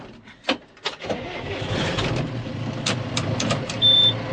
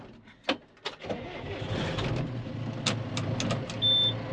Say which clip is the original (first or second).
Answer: second